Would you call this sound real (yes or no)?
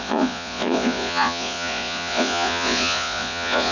no